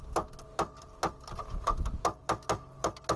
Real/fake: real